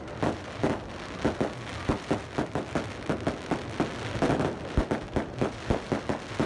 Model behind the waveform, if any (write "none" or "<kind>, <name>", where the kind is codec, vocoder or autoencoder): none